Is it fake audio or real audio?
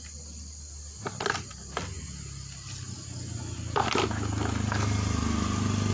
real